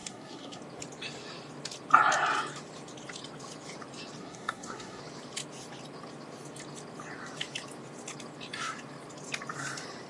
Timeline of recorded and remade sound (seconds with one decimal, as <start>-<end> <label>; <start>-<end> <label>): 0.0-0.6 remade; 0.6-4.2 recorded; 4.2-5.0 remade; 5.0-10.1 recorded